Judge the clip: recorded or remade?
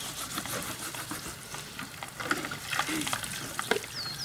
recorded